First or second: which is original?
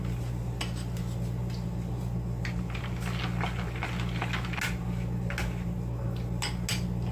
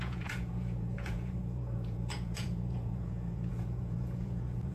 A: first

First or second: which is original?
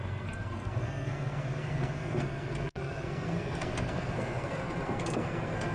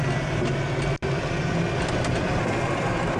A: second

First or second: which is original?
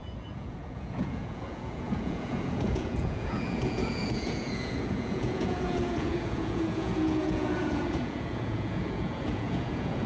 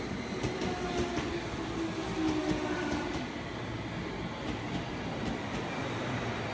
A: second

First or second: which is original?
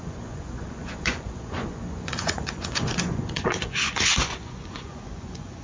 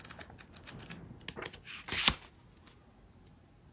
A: second